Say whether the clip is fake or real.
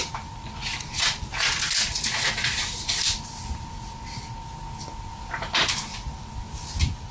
real